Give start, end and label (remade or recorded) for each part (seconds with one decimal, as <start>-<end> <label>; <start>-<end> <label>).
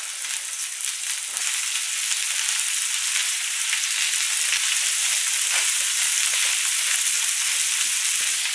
0.0-3.2 recorded; 3.2-3.7 remade; 3.7-8.5 recorded